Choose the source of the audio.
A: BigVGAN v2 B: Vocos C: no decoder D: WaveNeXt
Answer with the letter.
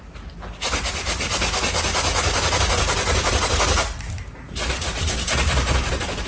C